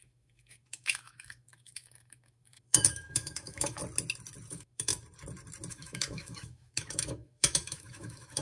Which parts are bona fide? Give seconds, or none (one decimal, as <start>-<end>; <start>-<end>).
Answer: 3.8-4.5; 4.9-5.7